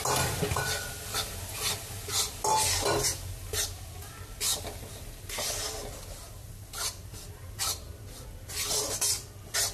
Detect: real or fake real